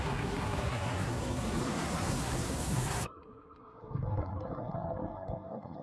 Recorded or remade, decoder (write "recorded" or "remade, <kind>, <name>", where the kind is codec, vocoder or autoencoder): remade, codec, SNAC